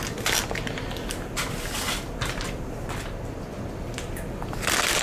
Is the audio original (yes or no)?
yes